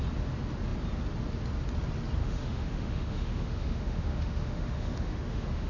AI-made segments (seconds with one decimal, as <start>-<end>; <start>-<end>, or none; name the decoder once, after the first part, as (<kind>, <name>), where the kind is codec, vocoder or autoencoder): 2.2-5.7 (autoencoder, DAC-VAE)